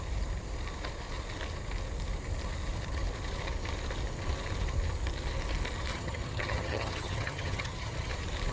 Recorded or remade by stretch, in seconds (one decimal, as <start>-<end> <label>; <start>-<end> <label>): 0.0-5.9 recorded; 5.9-8.1 remade; 8.1-8.5 recorded